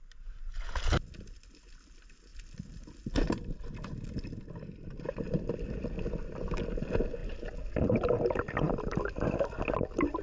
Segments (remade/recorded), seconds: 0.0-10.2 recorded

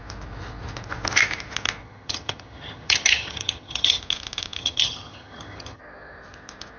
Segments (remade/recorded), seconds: 0.0-1.8 recorded; 1.8-4.0 remade; 4.0-4.6 recorded; 4.6-5.8 remade; 5.8-6.8 recorded

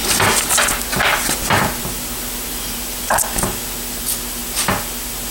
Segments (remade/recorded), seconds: 0.0-5.3 recorded

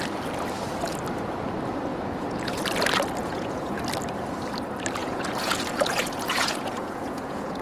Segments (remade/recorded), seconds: 0.0-1.9 recorded; 1.9-2.6 remade; 2.6-3.2 recorded; 3.2-3.8 remade; 3.8-5.0 recorded; 5.0-7.6 remade